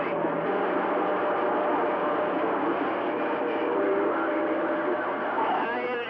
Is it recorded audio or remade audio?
recorded